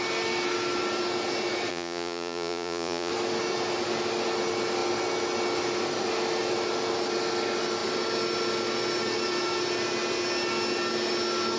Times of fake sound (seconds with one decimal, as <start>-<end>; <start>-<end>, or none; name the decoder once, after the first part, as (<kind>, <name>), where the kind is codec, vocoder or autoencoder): 1.7-3.1 (vocoder, Vocos)